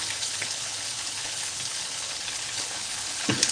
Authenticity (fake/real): fake